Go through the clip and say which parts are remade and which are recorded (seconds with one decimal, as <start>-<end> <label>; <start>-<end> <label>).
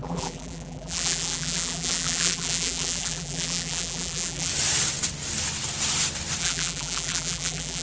0.0-4.5 remade; 4.5-6.4 recorded; 6.4-7.8 remade